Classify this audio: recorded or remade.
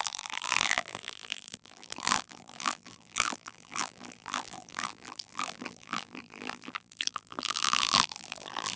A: remade